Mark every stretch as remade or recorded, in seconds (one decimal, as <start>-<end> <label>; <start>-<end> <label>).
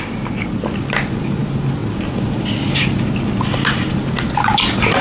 0.0-5.0 recorded